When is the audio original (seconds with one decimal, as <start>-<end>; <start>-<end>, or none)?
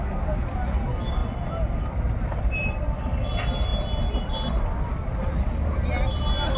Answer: 0.0-1.2; 3.0-6.6